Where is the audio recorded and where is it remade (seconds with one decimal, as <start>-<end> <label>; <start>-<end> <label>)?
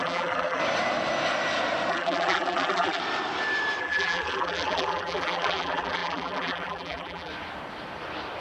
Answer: 0.0-0.6 remade; 0.6-1.9 recorded; 1.9-3.0 remade; 3.0-3.8 recorded; 3.8-7.3 remade; 7.3-8.4 recorded